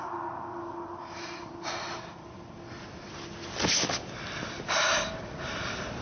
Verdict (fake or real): real